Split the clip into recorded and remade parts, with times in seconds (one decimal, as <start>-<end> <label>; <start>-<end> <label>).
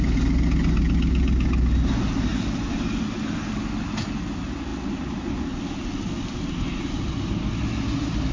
0.0-8.3 recorded